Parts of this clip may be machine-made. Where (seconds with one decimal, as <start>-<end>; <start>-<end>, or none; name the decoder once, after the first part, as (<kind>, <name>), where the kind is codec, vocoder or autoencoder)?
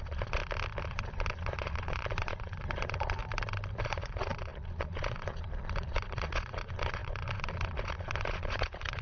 0.0-0.4 (vocoder, Vocos); 0.9-3.2; 3.8-9.0